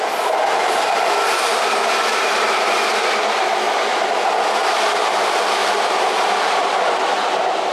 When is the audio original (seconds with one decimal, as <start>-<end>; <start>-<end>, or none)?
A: 0.0-2.1; 2.7-5.6; 6.6-7.7